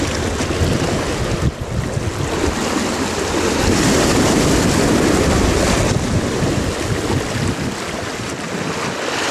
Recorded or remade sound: recorded